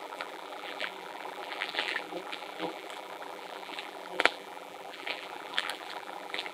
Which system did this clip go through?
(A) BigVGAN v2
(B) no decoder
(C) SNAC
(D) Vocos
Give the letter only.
A